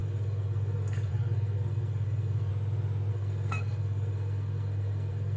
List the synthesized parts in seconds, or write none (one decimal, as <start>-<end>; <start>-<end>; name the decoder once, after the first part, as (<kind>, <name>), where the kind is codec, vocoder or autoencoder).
0.0-2.5 (codec, SNAC); 3.1-5.4